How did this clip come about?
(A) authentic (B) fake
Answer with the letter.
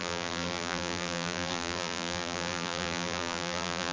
B